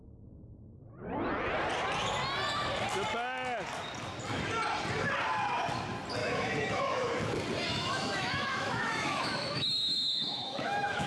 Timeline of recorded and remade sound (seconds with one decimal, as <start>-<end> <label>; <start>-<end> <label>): 0.0-6.2 recorded; 6.2-7.2 remade; 7.2-7.7 recorded; 7.7-11.1 remade